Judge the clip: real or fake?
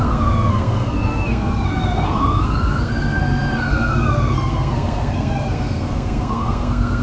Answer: fake